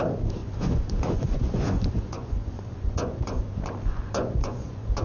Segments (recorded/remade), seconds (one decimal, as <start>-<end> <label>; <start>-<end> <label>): 0.0-0.4 recorded; 0.4-3.4 remade; 3.4-3.9 recorded; 3.9-5.0 remade